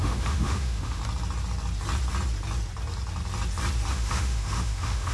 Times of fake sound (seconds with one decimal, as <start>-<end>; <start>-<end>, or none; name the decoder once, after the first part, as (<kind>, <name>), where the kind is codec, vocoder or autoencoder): 0.0-1.0 (autoencoder, DAC-VAE); 3.9-5.1